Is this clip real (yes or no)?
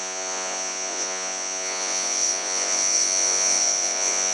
no